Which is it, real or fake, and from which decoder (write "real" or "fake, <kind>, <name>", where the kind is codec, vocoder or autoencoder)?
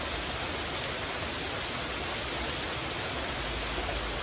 real